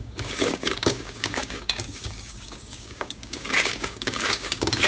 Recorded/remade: remade